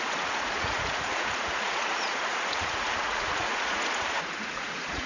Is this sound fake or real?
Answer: fake